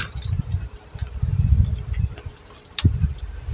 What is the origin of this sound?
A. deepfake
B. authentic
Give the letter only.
B